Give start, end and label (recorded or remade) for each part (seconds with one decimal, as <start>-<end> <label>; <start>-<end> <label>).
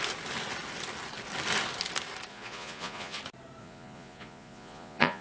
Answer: 0.0-2.3 recorded; 2.3-3.2 remade; 3.2-3.6 recorded; 3.6-5.2 remade